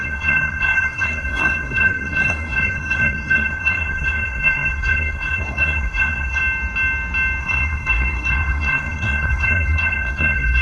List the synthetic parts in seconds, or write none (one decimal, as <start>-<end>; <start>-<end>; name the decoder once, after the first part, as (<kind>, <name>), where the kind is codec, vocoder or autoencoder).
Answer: 0.0-6.4 (codec, SNAC); 7.4-10.6